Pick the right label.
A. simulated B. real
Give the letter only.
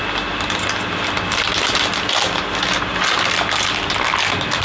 B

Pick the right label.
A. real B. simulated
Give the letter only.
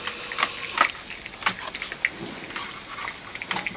A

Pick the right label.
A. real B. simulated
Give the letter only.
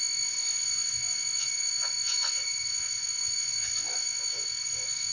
B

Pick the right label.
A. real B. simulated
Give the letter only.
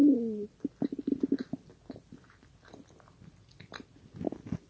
A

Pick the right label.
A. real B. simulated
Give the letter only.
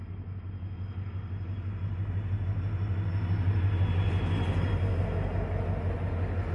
A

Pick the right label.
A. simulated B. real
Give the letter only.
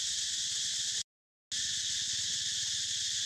B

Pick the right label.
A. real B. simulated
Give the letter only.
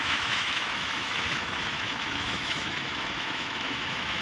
B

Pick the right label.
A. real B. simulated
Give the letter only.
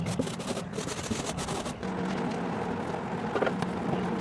A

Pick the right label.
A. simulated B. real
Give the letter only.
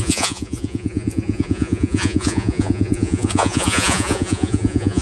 A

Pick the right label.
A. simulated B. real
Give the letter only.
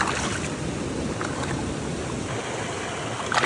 B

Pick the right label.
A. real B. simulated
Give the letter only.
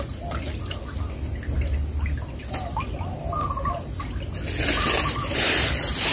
A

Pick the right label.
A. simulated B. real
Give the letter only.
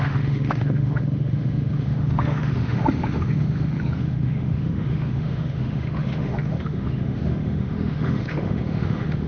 A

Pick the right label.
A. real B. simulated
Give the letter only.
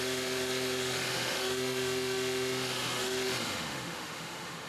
B